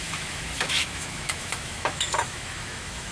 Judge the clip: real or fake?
fake